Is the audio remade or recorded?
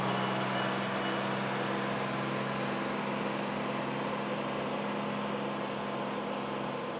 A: recorded